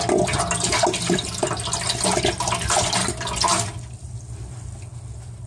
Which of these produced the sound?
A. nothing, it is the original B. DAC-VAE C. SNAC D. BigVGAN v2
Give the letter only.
A